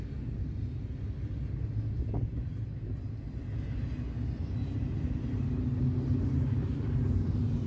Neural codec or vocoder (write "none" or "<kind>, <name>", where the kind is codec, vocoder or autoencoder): none